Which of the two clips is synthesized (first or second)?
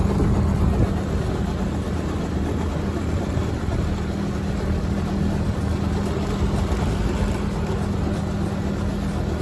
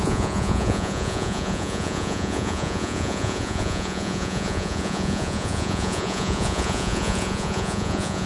second